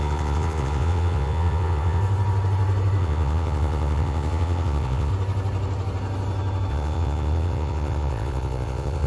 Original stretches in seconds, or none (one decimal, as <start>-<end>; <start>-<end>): 2.0-3.0; 5.1-6.7